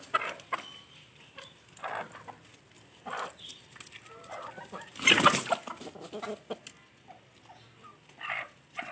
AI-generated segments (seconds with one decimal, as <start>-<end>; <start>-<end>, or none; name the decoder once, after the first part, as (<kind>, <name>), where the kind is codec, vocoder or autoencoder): none